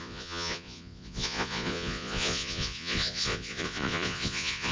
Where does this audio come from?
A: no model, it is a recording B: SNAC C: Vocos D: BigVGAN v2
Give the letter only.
C